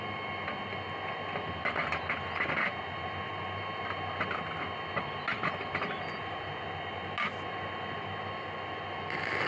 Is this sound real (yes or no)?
yes